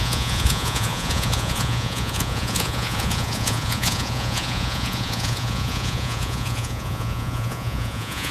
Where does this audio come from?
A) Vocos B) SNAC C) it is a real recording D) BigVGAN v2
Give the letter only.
A